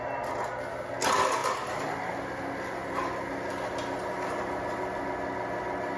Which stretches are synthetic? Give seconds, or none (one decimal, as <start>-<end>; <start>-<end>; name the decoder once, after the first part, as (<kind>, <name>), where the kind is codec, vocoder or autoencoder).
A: none